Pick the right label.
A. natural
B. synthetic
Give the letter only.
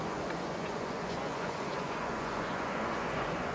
B